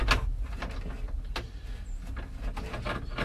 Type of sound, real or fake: real